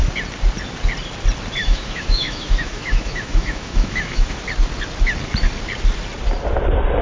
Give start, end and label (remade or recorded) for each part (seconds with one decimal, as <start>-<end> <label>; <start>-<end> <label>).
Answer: 0.0-1.6 recorded; 1.6-4.4 remade; 4.4-7.0 recorded